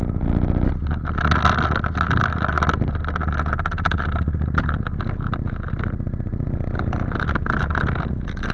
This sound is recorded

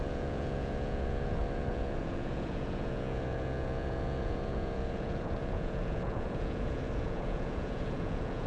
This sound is remade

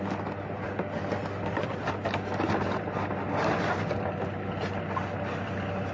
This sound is recorded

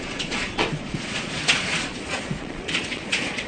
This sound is remade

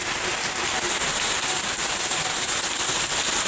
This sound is recorded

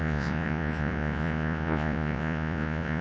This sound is remade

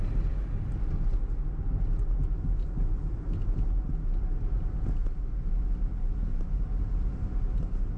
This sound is recorded